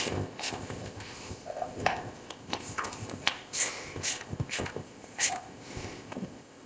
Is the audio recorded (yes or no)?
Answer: no